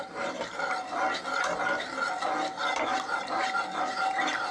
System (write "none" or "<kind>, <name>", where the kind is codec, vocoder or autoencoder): none